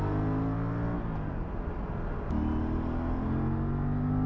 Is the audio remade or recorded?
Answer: recorded